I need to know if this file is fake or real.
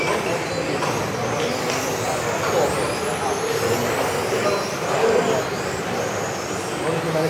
real